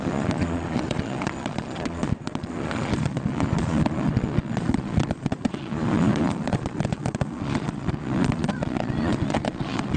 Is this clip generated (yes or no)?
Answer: yes